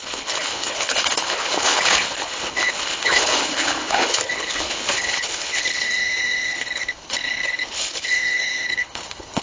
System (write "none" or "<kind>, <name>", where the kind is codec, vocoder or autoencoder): codec, HILCodec